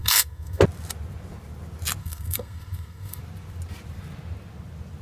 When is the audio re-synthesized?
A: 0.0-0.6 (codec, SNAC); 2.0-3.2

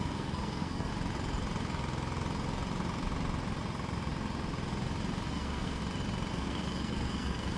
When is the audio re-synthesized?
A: 0.0-0.9 (codec, SNAC); 5.3-5.8; 6.3-7.6

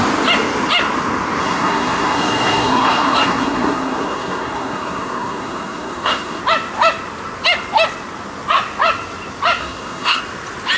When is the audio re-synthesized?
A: 1.4-6.4 (codec, SNAC); 9.6-10.2